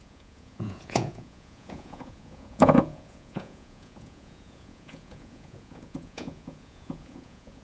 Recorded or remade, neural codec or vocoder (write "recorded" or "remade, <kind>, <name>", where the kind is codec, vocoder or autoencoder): remade, vocoder, Vocos